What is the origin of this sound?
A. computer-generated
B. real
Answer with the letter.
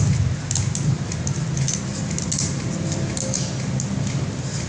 B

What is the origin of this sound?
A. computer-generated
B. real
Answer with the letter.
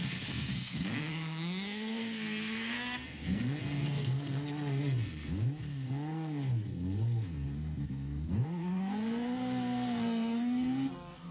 A